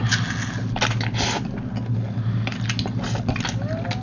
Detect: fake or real real